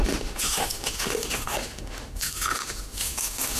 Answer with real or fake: fake